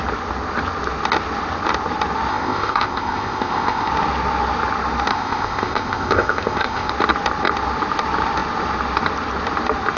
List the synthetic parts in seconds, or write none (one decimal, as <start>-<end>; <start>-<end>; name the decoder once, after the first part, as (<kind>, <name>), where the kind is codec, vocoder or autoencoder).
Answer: 2.3-3.9 (codec, ZipCodec); 5.1-6.9